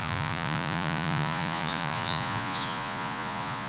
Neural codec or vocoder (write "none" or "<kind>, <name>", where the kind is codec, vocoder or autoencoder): vocoder, Vocos